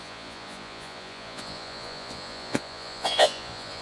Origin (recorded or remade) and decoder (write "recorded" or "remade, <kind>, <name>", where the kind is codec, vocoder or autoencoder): remade, vocoder, Vocos